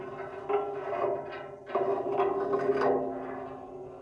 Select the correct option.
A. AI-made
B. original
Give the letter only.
B